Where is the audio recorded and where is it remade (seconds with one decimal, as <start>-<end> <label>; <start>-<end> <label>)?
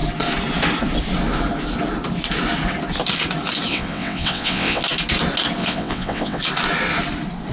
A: 0.0-3.7 recorded; 3.7-4.8 remade; 4.8-5.6 recorded; 5.6-6.4 remade; 6.4-7.5 recorded